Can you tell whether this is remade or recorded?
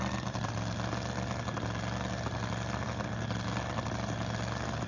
recorded